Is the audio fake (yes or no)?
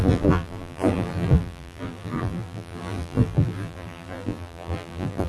yes